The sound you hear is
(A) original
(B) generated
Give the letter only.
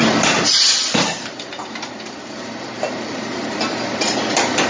A